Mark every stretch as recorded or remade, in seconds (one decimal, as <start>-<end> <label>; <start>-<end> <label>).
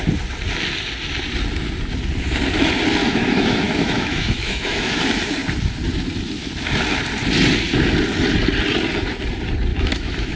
0.0-3.0 recorded; 3.0-5.0 remade; 5.0-9.7 recorded; 9.7-10.4 remade